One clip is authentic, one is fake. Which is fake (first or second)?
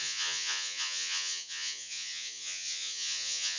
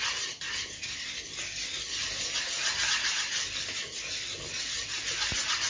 first